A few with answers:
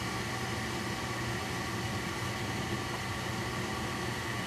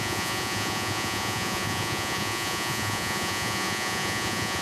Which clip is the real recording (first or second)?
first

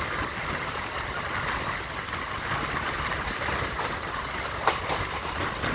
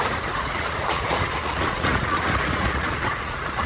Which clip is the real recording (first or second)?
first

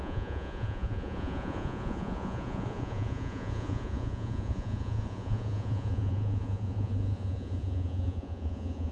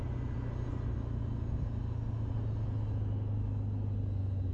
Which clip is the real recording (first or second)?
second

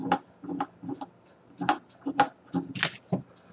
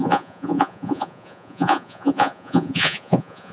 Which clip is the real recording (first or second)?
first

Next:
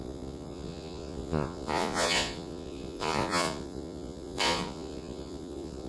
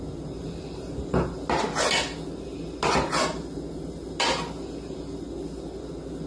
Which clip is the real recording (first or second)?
second